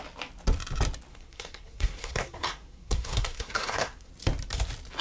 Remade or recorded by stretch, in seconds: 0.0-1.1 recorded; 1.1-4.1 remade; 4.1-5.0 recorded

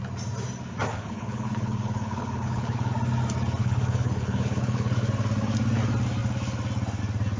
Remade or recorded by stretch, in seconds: 0.0-0.9 recorded; 0.9-2.9 remade; 2.9-3.6 recorded; 3.6-5.1 remade; 5.1-7.4 recorded

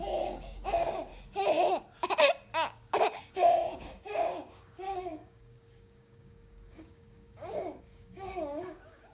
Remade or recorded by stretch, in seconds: 0.0-1.1 remade; 1.1-3.2 recorded; 3.2-9.1 remade

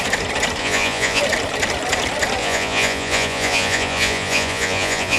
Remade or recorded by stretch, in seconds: 0.0-0.6 recorded; 0.6-1.2 remade; 1.2-2.4 recorded; 2.4-5.2 remade